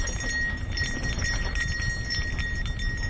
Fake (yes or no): no